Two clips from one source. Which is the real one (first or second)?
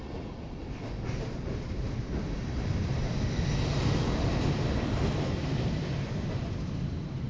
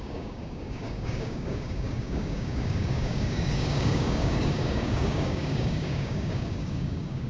first